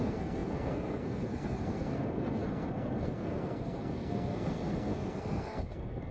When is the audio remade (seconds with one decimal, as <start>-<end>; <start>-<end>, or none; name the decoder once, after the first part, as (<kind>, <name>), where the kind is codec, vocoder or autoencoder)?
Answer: 0.0-6.1 (codec, SNAC)